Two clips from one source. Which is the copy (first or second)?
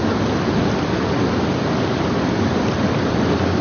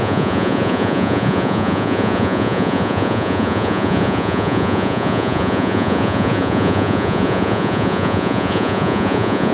second